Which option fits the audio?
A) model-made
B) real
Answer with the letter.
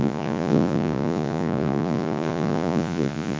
A